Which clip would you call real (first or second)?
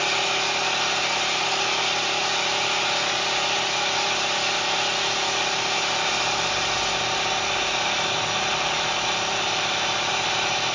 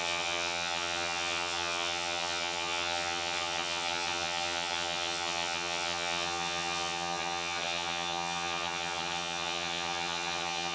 first